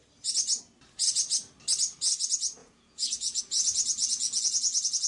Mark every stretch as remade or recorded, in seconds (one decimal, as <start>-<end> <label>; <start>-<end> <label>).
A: 0.0-2.6 recorded; 2.6-3.4 remade; 3.4-4.0 recorded; 4.0-5.1 remade

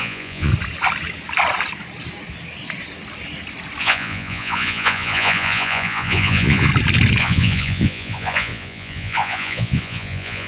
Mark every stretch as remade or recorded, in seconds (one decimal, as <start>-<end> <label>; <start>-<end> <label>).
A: 0.0-0.5 remade; 0.5-3.8 recorded; 3.8-6.7 remade; 6.7-7.2 recorded; 7.2-10.5 remade

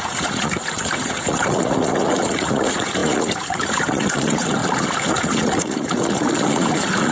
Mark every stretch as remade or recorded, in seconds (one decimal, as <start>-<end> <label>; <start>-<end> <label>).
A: 0.0-4.6 remade; 4.6-5.1 recorded; 5.1-7.1 remade

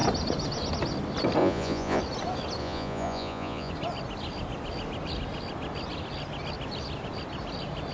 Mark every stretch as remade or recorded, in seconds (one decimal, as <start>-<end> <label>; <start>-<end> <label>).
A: 0.0-1.4 recorded; 1.4-2.0 remade; 2.0-2.6 recorded; 2.6-3.7 remade; 3.7-7.9 recorded